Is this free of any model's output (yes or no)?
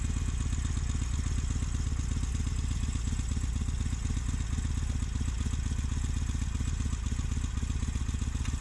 yes